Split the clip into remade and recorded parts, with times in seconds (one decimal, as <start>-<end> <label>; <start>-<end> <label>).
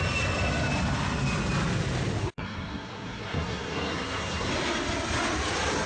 0.0-2.2 recorded; 2.2-4.5 remade; 4.5-5.9 recorded